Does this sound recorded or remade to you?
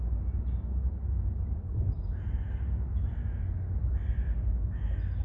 recorded